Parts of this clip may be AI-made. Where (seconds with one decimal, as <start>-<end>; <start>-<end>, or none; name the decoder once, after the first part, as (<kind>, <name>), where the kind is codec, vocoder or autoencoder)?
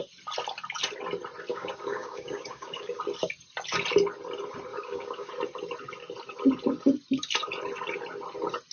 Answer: 1.5-3.0 (codec, DAC); 4.7-5.3